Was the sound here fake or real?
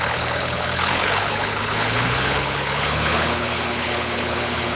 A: fake